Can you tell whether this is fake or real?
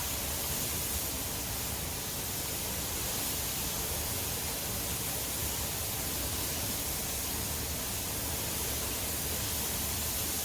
real